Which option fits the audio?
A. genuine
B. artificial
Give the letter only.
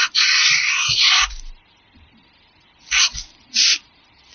A